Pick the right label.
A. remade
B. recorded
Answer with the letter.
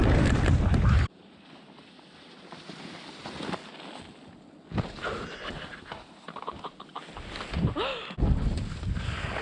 B